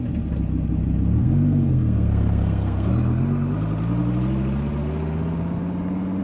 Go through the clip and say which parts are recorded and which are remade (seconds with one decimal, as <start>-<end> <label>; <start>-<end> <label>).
0.0-1.2 recorded; 1.2-2.9 remade; 2.9-6.2 recorded